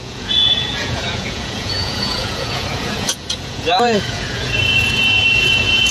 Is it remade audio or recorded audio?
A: remade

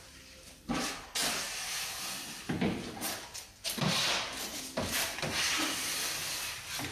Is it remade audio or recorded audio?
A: recorded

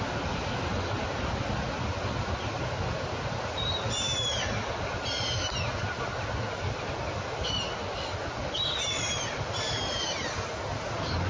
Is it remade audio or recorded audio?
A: recorded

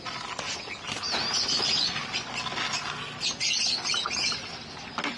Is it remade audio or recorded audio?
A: recorded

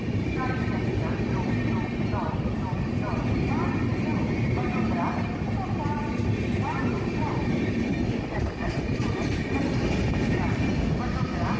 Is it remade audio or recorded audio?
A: recorded